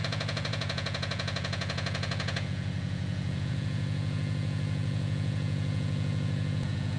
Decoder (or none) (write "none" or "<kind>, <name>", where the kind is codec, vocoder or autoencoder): vocoder, Vocos